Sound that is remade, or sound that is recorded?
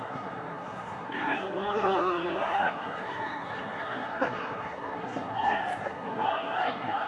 remade